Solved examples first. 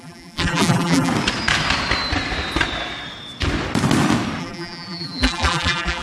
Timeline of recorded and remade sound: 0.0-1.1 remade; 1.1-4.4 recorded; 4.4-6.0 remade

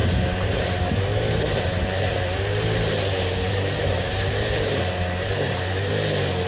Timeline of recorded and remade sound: 0.0-3.0 remade; 3.0-3.5 recorded; 3.5-5.9 remade; 5.9-6.5 recorded

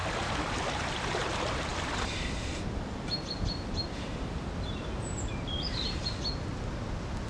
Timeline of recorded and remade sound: 0.0-1.7 recorded; 1.7-6.1 remade; 6.1-7.3 recorded

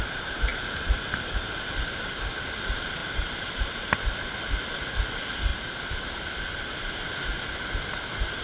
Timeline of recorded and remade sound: 0.0-3.0 recorded; 3.0-3.5 remade; 3.5-5.5 recorded; 5.5-6.9 remade; 6.9-8.4 recorded

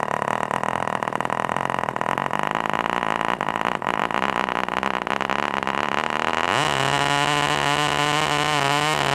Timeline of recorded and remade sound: 0.0-9.1 recorded

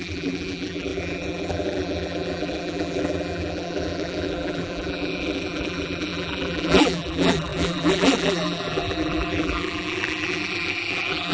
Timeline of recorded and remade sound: 0.0-11.3 remade